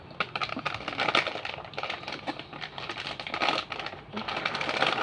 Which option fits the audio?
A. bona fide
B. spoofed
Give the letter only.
A